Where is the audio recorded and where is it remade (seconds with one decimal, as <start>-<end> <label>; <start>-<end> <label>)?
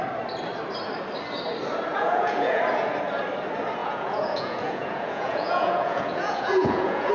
0.0-1.9 recorded; 1.9-2.6 remade; 2.6-3.8 recorded; 3.8-7.1 remade